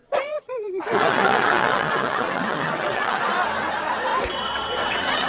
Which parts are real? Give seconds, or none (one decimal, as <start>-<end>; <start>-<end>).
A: 3.2-4.1